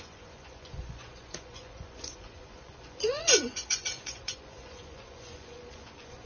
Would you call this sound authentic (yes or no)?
no